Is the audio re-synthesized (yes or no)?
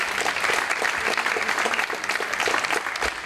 no